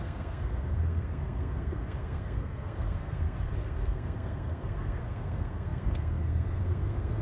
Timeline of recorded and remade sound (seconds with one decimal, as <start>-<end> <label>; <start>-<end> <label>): 0.0-7.2 remade